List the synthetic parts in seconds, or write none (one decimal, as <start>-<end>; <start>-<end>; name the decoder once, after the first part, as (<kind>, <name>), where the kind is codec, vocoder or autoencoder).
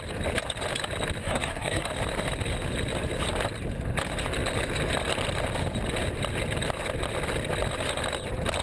1.2-1.9 (codec, SNAC)